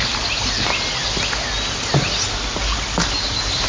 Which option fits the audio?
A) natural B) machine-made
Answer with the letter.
A